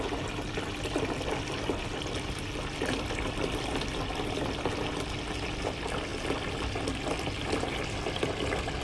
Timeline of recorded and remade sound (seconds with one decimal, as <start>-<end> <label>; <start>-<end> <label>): 0.0-8.8 recorded